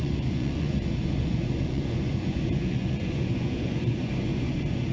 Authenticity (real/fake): fake